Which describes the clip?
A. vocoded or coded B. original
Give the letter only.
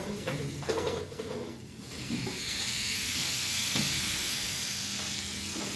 A